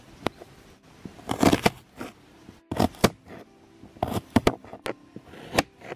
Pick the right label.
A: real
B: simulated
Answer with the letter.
A